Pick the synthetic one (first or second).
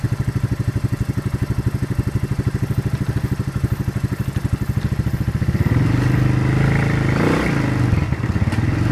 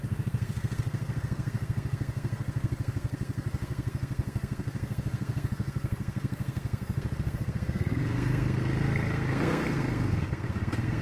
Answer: second